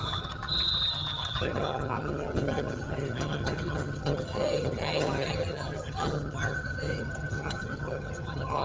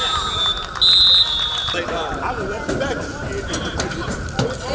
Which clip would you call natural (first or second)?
second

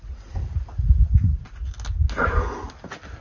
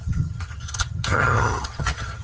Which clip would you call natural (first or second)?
first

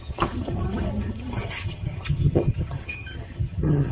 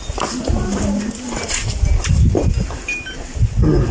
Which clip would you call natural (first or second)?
second